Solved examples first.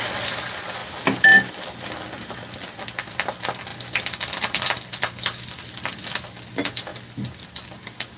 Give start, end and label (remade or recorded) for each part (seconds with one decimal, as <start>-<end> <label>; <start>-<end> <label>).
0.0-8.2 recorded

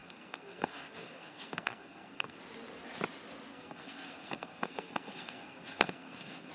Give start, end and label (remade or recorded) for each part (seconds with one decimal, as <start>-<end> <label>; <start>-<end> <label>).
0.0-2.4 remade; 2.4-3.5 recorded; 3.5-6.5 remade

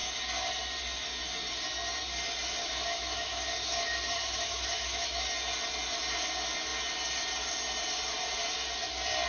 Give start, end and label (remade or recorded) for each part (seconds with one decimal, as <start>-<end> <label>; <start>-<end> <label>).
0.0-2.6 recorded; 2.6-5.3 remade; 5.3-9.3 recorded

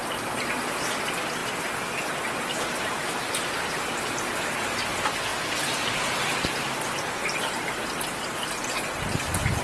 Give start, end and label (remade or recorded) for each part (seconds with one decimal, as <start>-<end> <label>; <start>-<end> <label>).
0.0-0.6 remade; 0.6-9.6 recorded